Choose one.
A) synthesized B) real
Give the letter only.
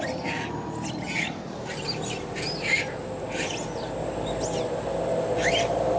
B